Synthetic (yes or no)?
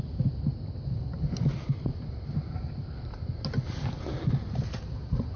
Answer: no